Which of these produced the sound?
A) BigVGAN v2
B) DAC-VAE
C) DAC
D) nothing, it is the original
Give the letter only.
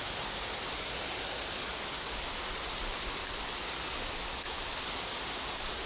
D